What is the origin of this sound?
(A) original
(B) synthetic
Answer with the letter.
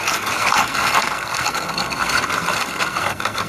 B